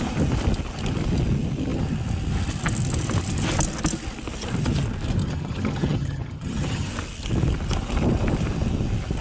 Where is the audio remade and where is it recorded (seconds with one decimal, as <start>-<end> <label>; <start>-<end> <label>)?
0.0-5.2 recorded; 5.2-6.9 remade; 6.9-9.2 recorded